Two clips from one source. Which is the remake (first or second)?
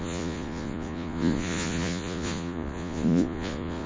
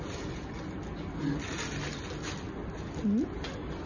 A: first